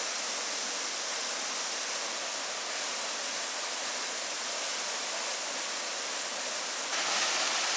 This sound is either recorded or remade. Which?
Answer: recorded